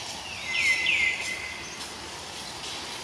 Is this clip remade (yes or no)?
no